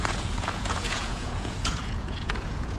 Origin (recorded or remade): remade